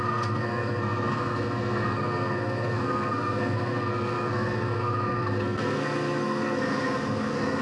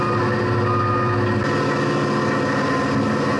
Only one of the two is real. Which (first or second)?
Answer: second